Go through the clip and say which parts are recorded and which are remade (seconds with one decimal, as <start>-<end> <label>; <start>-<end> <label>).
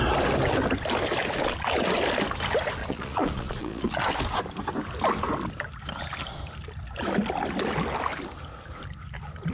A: 0.0-2.8 recorded; 2.8-4.1 remade; 4.1-9.5 recorded